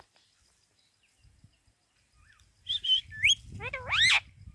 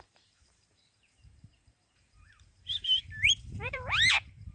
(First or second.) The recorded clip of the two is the first